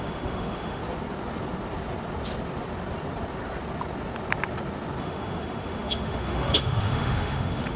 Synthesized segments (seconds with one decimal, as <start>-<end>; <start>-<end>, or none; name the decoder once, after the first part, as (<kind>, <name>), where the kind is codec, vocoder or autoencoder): 0.0-0.8 (autoencoder, DAC-VAE); 5.0-7.8